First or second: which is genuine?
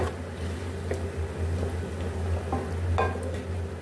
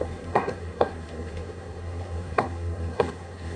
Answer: first